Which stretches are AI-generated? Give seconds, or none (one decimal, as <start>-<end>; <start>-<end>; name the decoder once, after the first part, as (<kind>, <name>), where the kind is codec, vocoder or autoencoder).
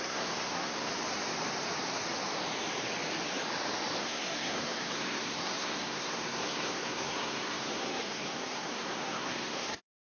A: 0.0-0.9 (codec, SNAC); 4.0-10.1